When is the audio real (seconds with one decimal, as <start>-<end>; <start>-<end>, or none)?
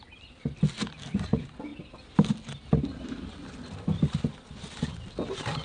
0.0-5.6